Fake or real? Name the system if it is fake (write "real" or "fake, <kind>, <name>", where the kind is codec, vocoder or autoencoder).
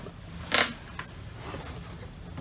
real